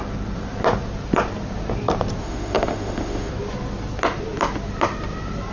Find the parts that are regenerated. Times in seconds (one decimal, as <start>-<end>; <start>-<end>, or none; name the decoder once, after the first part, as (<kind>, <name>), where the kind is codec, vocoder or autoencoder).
2.2-3.3 (autoencoder, DAC-VAE)